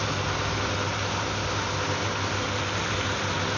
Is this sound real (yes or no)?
yes